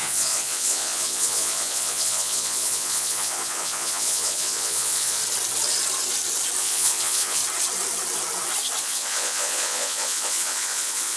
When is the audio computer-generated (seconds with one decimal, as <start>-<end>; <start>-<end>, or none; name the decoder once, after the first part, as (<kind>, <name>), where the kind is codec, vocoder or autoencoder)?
0.0-5.2 (vocoder, Vocos); 6.6-7.4; 8.8-11.2